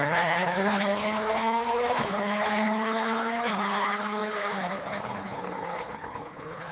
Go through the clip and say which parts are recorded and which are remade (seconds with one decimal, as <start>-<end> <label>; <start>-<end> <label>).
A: 0.0-6.7 remade